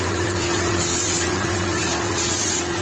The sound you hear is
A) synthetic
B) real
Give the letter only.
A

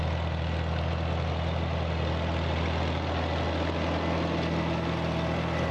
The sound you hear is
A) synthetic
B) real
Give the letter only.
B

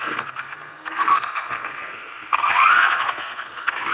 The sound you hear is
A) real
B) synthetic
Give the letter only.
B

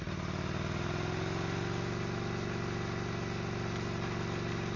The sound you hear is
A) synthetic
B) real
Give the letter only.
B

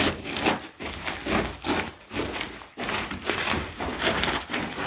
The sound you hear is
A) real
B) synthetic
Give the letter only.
A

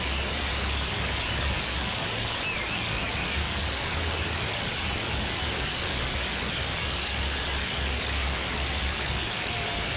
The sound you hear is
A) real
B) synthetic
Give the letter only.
B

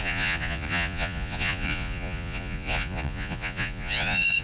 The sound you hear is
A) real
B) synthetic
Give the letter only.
B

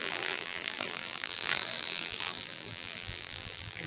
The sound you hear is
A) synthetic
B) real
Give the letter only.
A